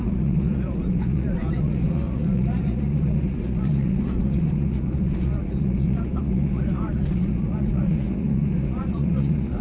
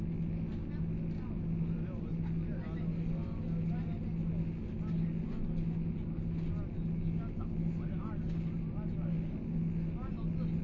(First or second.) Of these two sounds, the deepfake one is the first